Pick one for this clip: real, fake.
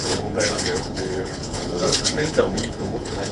fake